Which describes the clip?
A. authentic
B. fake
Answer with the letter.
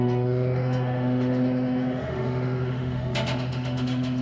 B